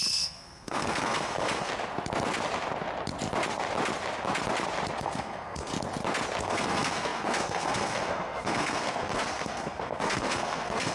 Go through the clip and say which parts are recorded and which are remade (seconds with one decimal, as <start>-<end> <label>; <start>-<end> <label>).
0.0-1.7 remade; 1.7-5.0 recorded; 5.0-5.7 remade; 5.7-6.4 recorded; 6.4-10.9 remade